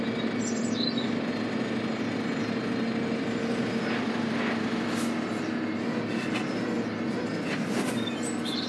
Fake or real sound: real